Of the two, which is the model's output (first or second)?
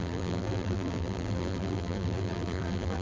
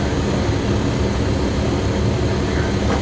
first